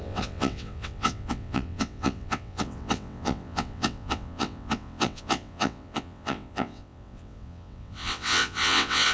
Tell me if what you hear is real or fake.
fake